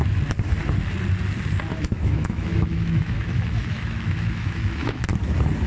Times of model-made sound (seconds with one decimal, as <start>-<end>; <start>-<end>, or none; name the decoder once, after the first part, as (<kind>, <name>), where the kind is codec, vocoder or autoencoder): 1.7-5.1 (autoencoder, DAC-VAE)